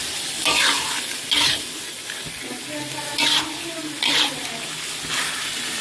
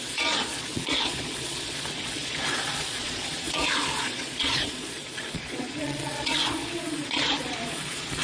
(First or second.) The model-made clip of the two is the second